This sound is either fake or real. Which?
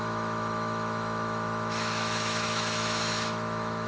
fake